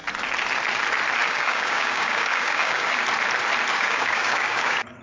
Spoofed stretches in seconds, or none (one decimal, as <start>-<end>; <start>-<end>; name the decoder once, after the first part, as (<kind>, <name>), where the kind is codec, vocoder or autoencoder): 1.2-3.0 (codec, DAC); 3.7-5.0